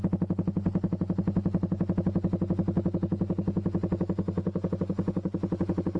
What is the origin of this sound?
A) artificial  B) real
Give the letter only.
B